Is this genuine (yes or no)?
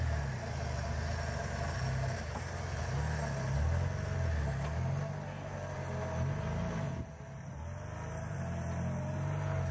yes